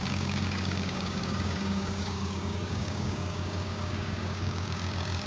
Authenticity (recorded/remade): remade